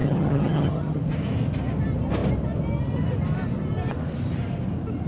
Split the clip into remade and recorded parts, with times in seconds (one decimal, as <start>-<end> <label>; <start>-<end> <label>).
0.0-1.0 remade; 1.0-5.1 recorded